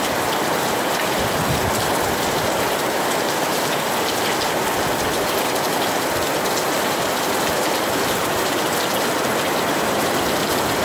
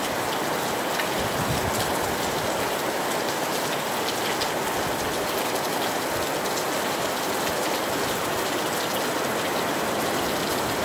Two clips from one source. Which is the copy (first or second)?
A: first